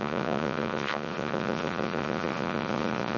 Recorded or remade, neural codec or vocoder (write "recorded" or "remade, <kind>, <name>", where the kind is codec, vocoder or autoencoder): remade, vocoder, Vocos